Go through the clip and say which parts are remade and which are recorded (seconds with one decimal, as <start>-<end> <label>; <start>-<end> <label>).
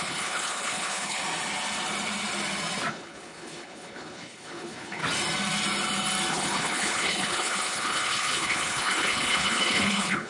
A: 0.0-1.2 remade; 1.2-2.9 recorded; 2.9-5.0 remade; 5.0-6.3 recorded; 6.3-10.3 remade